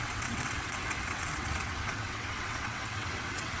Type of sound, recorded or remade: remade